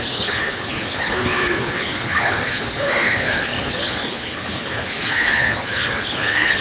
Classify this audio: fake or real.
fake